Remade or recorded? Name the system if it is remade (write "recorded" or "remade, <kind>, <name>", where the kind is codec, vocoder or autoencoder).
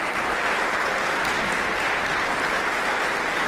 recorded